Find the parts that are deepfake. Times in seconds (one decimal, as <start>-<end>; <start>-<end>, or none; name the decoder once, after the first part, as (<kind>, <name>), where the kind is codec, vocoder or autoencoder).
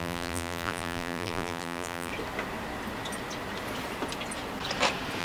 0.0-2.1 (vocoder, BigVGAN v2)